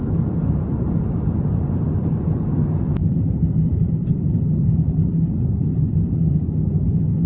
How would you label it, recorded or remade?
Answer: remade